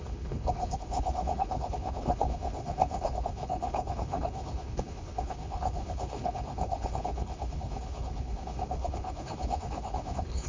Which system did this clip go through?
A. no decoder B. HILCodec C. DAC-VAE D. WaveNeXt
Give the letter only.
B